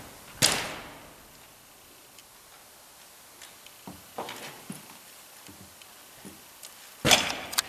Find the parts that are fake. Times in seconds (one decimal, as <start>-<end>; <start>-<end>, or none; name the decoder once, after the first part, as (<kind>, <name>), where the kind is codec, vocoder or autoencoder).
none